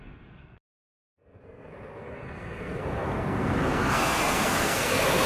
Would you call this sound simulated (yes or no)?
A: yes